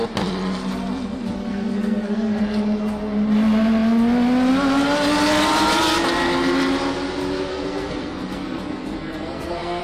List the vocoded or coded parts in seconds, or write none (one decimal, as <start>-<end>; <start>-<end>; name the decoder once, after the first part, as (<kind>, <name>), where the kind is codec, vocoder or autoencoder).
1.4-2.4 (codec, SNAC); 7.5-9.8